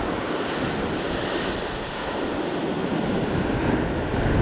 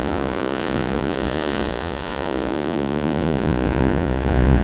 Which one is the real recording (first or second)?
first